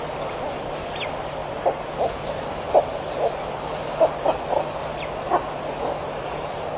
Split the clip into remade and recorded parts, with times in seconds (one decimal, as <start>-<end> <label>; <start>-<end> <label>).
0.0-6.8 recorded